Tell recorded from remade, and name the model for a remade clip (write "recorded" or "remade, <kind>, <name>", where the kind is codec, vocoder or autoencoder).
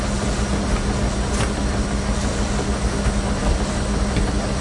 recorded